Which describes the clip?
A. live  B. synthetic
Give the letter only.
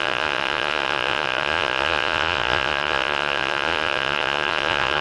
B